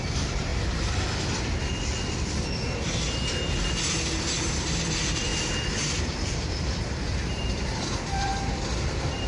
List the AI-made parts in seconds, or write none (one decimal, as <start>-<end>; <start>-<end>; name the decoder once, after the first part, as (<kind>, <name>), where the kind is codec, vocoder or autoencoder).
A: 0.0-0.5 (vocoder, BigVGAN v2); 4.4-5.3; 6.0-8.3